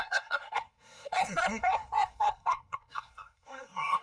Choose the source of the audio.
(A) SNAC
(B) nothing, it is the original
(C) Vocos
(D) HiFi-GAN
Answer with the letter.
A